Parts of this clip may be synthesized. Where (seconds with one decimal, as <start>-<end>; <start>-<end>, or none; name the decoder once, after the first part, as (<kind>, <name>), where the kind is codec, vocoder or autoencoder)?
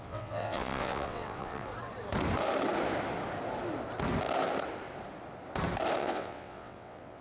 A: 0.0-1.7 (vocoder, WaveNeXt); 6.0-7.2